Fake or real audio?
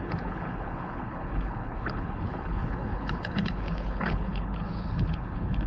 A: fake